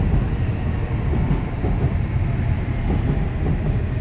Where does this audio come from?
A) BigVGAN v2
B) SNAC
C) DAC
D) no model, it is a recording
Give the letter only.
D